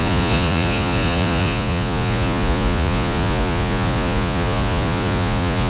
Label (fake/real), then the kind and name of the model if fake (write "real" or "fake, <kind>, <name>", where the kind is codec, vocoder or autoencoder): fake, vocoder, Vocos